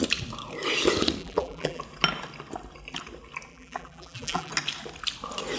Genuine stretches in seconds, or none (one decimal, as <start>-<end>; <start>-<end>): 0.0-1.2; 1.8-3.5; 4.5-5.6